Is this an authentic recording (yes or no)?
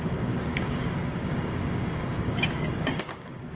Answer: no